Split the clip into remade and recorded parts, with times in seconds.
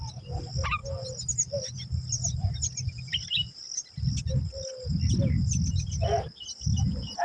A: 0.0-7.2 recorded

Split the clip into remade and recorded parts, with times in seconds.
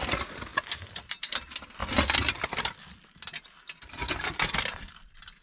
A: 0.0-5.4 recorded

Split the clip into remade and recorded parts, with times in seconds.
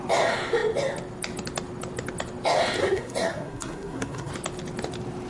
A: 0.0-2.8 recorded; 2.8-4.3 remade; 4.3-5.3 recorded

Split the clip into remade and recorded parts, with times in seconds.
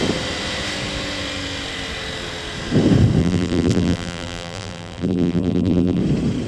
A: 0.0-3.2 recorded; 3.2-6.0 remade; 6.0-6.5 recorded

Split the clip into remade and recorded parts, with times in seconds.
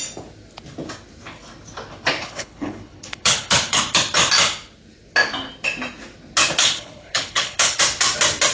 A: 0.0-2.2 recorded; 2.2-3.8 remade; 3.8-6.6 recorded; 6.6-7.8 remade; 7.8-8.5 recorded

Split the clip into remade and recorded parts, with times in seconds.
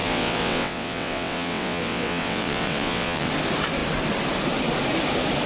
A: 0.0-3.3 remade; 3.3-5.5 recorded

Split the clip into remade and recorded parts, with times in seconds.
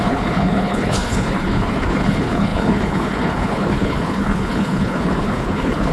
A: 0.0-5.9 remade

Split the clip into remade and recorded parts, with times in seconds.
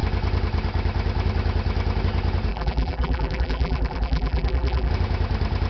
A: 0.0-2.5 recorded; 2.5-4.9 remade; 4.9-5.7 recorded